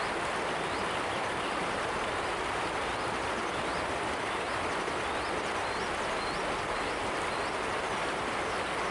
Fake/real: real